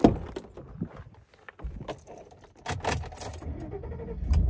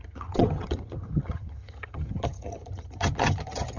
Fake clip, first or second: second